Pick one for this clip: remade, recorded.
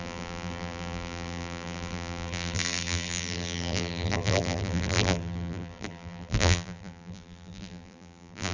remade